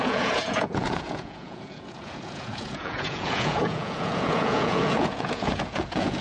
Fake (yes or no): yes